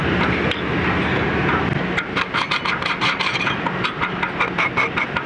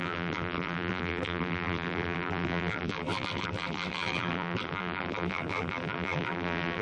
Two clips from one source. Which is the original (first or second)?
first